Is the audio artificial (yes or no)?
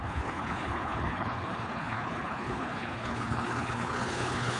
yes